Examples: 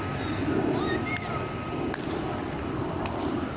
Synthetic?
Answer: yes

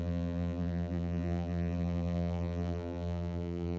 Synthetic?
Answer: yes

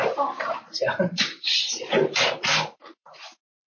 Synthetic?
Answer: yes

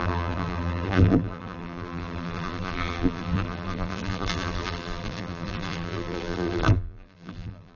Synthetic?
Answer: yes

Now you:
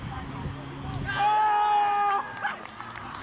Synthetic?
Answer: no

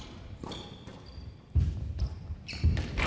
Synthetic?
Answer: yes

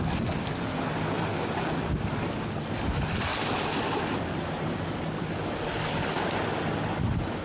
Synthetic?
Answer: no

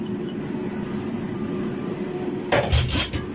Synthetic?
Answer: yes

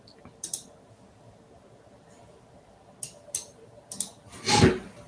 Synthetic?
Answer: no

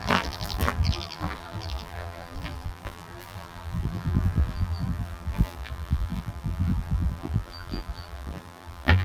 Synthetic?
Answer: yes